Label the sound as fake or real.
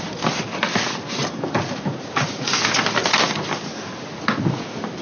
real